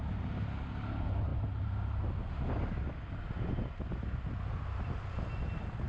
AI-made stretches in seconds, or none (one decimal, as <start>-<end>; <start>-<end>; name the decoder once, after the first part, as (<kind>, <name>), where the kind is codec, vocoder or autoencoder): none